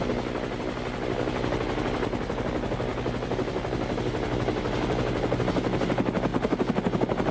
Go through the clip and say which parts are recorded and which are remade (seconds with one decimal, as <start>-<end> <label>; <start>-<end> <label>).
0.0-7.3 recorded